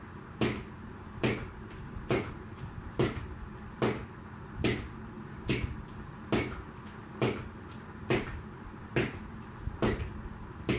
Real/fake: real